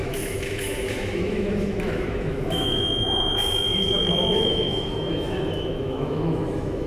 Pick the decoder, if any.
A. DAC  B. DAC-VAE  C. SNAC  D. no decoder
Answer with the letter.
B